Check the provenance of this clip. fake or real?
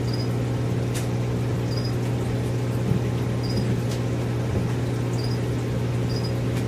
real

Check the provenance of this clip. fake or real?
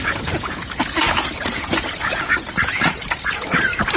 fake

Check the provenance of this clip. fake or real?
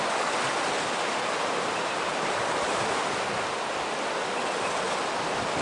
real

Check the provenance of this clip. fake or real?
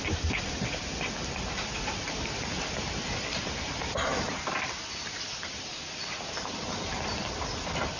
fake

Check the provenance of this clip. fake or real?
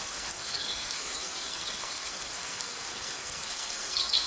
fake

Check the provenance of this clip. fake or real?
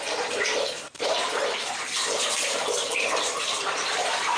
fake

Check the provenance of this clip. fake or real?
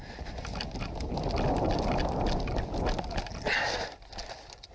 real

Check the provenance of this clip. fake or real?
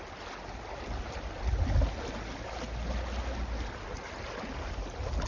real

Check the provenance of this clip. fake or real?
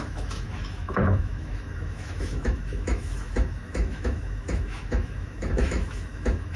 fake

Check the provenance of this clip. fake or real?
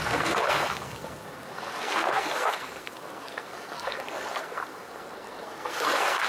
fake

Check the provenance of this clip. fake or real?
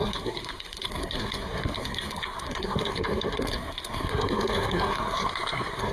fake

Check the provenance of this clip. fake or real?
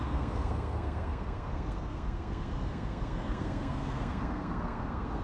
fake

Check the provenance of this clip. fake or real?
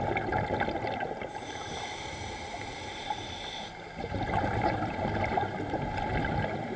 real